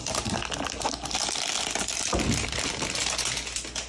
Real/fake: real